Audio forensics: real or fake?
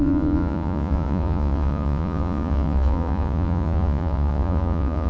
fake